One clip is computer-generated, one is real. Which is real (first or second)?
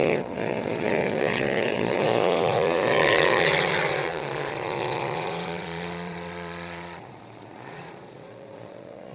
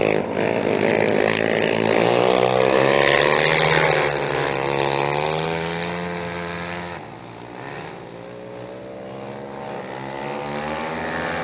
second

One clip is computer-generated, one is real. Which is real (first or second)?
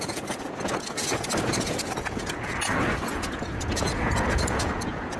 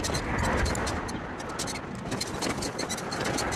second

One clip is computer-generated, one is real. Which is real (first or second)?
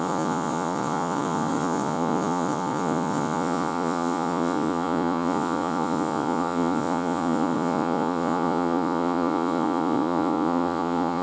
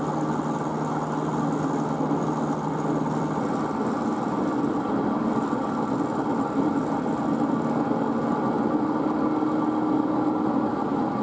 second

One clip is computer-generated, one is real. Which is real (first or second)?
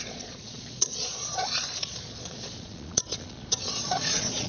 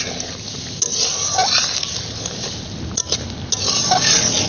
second